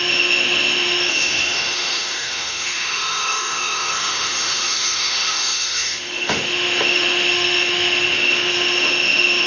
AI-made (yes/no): yes